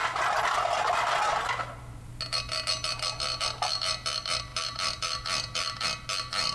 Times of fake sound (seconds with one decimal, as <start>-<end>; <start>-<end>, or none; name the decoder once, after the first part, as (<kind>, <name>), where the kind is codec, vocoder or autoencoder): none